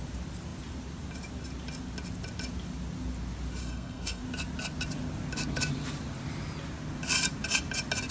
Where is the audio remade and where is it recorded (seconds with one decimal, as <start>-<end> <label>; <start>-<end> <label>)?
0.0-3.6 recorded; 3.6-4.2 remade; 4.2-8.1 recorded